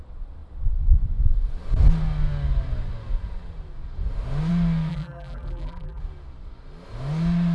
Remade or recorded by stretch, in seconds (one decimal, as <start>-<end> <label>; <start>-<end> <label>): 0.0-4.9 recorded; 4.9-6.0 remade; 6.0-7.5 recorded

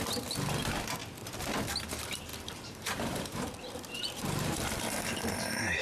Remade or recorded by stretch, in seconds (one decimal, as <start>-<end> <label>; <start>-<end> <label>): 0.0-2.3 recorded; 2.3-5.8 remade

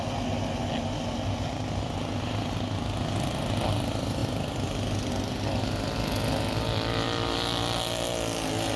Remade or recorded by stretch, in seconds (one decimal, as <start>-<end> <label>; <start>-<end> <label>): 0.0-8.8 recorded